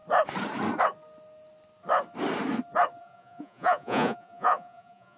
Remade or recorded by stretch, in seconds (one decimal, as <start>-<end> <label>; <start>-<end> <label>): 0.0-3.0 recorded; 3.0-5.2 remade

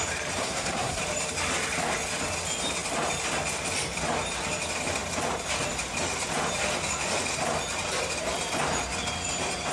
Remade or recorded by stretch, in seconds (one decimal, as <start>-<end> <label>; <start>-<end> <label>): 0.0-0.4 recorded; 0.4-1.0 remade; 1.0-9.7 recorded

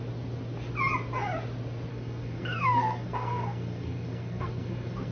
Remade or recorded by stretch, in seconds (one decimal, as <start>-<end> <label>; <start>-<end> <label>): 0.0-1.9 recorded; 1.9-5.1 remade

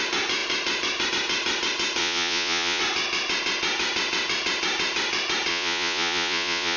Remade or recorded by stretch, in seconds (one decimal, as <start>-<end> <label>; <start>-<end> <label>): 0.0-2.0 recorded; 2.0-2.8 remade; 2.8-5.5 recorded; 5.5-6.8 remade

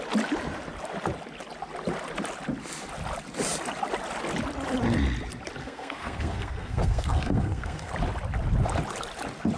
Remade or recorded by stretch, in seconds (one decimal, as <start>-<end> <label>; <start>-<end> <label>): 0.0-5.6 recorded; 5.6-7.9 remade; 7.9-9.6 recorded

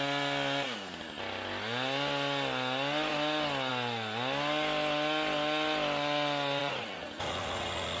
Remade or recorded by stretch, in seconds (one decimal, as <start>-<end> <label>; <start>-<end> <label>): 0.0-6.6 recorded; 6.6-8.0 remade